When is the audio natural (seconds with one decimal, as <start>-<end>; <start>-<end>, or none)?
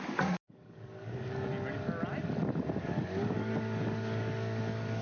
1.5-2.8